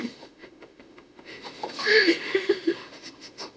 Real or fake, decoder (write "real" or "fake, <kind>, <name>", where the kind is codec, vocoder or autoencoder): fake, autoencoder, DAC-VAE